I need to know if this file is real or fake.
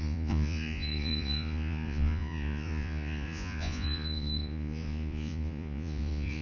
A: fake